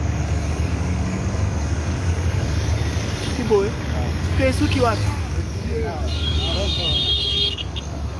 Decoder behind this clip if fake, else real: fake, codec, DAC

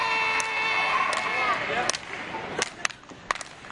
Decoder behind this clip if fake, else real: real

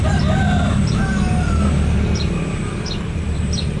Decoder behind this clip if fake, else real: real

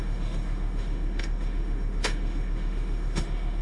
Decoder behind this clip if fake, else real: fake, autoencoder, DAC-VAE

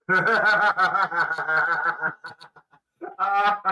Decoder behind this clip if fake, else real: real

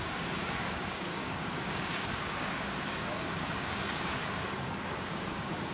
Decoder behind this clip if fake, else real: fake, codec, DAC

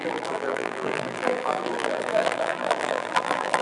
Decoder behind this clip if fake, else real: fake, vocoder, BigVGAN v2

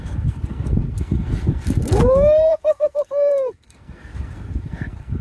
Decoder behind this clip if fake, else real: fake, codec, SNAC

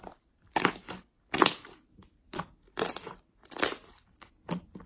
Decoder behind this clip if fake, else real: real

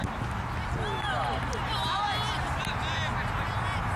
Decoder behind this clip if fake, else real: real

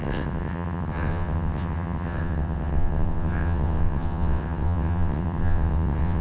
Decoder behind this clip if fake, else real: fake, vocoder, WaveNeXt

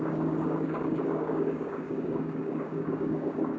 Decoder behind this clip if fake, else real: fake, codec, DAC